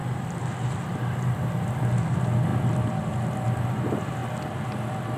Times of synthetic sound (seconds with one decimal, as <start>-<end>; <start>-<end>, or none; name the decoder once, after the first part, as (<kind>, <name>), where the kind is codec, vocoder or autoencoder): none